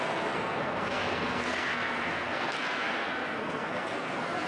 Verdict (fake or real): fake